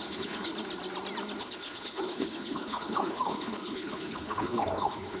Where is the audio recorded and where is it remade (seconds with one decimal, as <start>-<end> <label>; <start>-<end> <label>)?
0.0-0.5 remade; 0.5-1.4 recorded; 1.4-5.2 remade